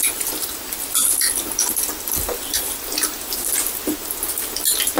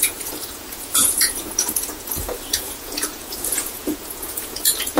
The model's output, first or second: second